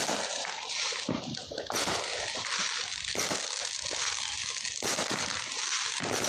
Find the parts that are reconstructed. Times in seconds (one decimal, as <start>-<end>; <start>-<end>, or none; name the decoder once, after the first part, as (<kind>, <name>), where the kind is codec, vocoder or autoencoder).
none